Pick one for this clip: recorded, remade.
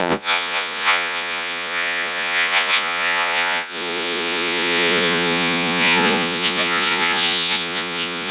remade